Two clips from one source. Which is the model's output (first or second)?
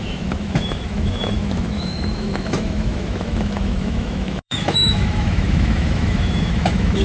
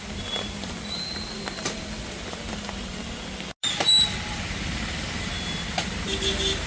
first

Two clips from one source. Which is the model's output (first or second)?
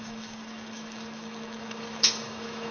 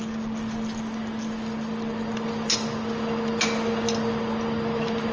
first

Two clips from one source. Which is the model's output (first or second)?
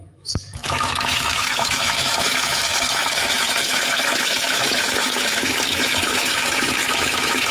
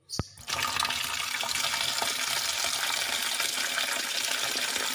first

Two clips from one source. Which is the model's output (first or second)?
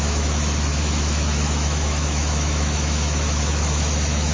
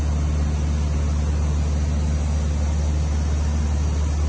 first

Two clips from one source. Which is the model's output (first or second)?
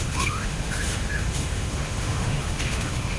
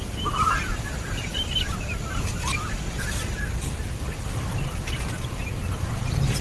first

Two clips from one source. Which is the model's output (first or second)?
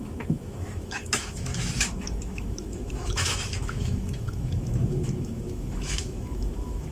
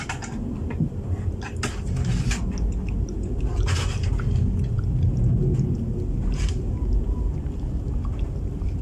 first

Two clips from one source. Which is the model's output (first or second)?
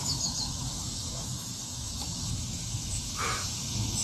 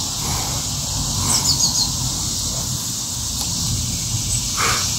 first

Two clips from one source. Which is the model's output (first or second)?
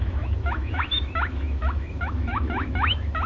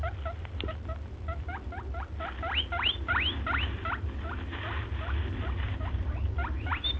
first